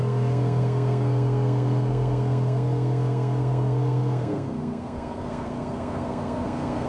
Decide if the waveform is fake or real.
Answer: fake